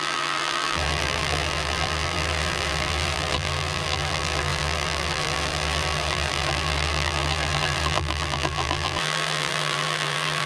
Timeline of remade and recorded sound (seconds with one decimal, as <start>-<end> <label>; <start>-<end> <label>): 0.0-10.5 remade